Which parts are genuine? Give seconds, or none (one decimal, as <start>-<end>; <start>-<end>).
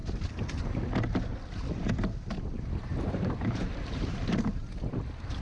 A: 0.7-2.9; 5.0-5.4